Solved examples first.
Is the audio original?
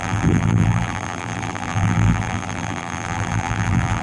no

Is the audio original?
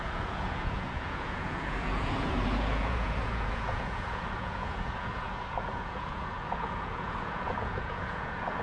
no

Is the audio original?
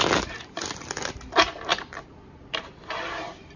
yes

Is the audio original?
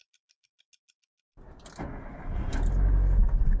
yes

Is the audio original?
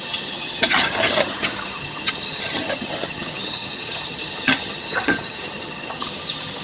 no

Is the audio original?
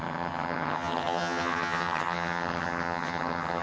no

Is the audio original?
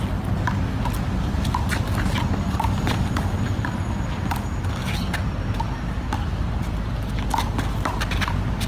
yes